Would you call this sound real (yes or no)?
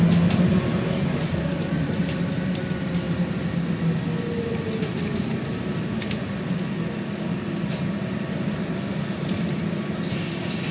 yes